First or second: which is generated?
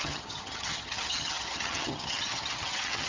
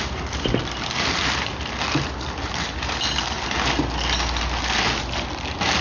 first